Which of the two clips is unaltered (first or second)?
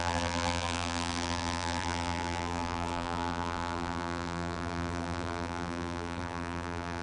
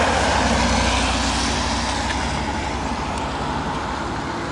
second